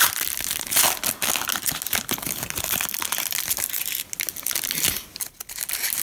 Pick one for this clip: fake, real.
real